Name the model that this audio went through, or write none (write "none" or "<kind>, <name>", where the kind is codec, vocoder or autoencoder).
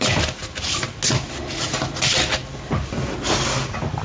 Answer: none